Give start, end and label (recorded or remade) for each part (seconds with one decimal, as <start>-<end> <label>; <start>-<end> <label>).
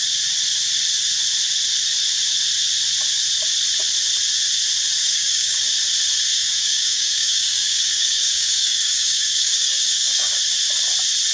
0.0-5.0 recorded; 5.0-5.6 remade; 5.6-6.3 recorded; 6.3-10.3 remade; 10.3-11.3 recorded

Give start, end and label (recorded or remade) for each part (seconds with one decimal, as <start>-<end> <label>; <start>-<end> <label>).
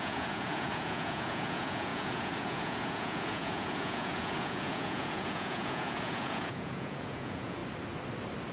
0.0-7.6 remade; 7.6-8.5 recorded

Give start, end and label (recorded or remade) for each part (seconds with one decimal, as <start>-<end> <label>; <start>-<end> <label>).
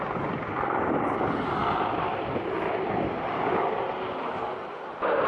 0.0-5.3 recorded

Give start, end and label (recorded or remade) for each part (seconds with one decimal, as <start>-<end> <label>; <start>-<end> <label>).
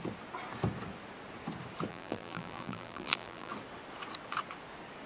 0.0-1.9 recorded; 1.9-3.5 remade; 3.5-5.1 recorded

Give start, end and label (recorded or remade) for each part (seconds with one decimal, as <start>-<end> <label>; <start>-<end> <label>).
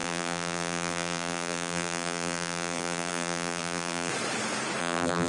0.0-4.1 remade; 4.1-4.8 recorded; 4.8-5.3 remade